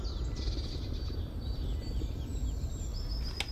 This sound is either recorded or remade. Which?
recorded